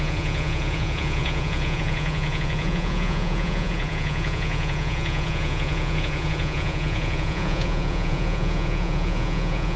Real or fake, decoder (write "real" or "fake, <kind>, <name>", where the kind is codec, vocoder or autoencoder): fake, vocoder, Vocos